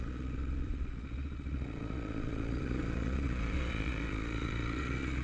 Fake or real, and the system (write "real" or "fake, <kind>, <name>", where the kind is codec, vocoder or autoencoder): fake, vocoder, Vocos